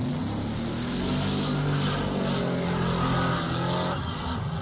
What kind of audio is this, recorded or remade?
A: recorded